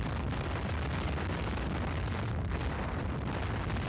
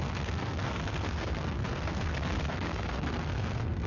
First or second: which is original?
first